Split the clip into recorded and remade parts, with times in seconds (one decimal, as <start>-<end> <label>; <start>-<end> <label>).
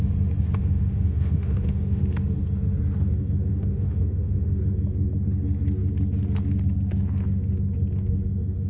0.0-0.6 recorded; 0.6-2.0 remade; 2.0-3.5 recorded; 3.5-4.6 remade; 4.6-8.7 recorded